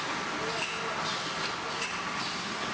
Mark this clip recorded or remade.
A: recorded